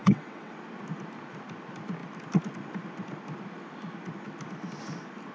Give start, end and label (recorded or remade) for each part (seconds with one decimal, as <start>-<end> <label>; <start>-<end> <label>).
0.0-0.5 remade; 0.5-5.3 recorded

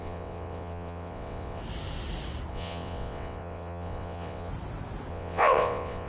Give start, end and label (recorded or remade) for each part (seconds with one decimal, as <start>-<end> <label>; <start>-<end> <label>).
0.0-1.6 remade; 1.6-2.5 recorded; 2.5-4.5 remade; 4.5-5.1 recorded; 5.1-6.1 remade

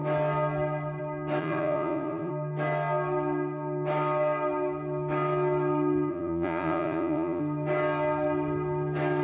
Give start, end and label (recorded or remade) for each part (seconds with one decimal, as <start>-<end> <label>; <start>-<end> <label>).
0.0-1.4 recorded; 1.4-2.3 remade; 2.3-6.1 recorded; 6.1-7.4 remade; 7.4-9.2 recorded

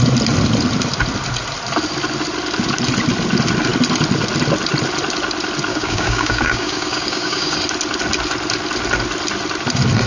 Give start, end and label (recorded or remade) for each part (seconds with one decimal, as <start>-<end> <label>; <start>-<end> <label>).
0.0-5.7 recorded; 5.7-7.6 remade; 7.6-10.1 recorded